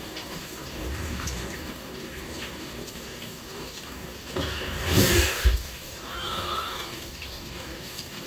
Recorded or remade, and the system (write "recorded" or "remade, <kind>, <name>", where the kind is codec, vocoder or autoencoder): remade, codec, DAC